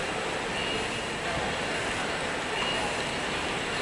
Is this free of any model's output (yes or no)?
yes